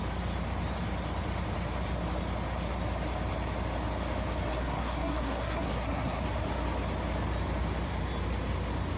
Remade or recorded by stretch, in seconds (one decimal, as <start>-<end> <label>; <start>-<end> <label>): 0.0-4.5 recorded; 4.5-6.2 remade; 6.2-9.0 recorded